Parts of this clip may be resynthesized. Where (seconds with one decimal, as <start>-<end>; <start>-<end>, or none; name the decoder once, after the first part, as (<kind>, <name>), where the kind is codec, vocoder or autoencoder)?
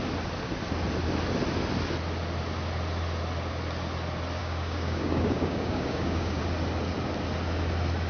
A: 4.4-6.4 (codec, DAC)